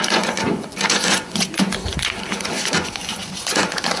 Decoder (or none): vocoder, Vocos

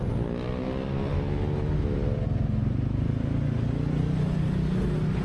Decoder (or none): none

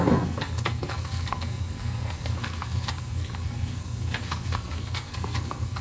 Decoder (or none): codec, SNAC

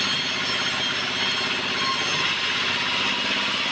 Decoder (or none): none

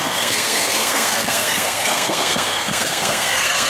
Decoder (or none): codec, SNAC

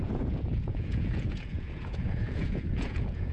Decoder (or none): vocoder, Vocos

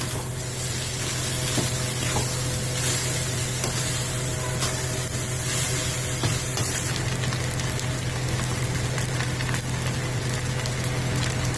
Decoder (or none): none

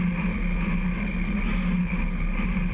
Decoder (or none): none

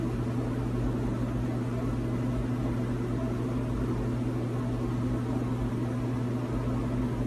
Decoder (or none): none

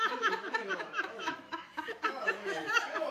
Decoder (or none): autoencoder, DAC-VAE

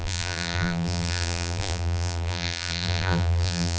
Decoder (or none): vocoder, BigVGAN v2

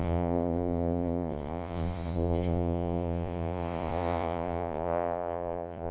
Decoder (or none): vocoder, Vocos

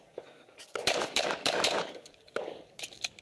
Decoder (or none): codec, DAC